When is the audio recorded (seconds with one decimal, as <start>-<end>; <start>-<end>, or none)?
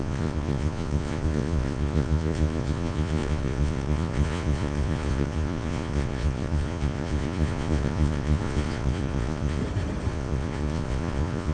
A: 9.6-10.1